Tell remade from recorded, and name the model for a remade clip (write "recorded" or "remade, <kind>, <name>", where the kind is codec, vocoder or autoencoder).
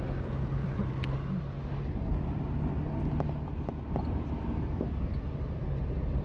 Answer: recorded